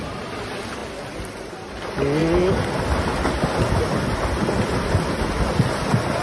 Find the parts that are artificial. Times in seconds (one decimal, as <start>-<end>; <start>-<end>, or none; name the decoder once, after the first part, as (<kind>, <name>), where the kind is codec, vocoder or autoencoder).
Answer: none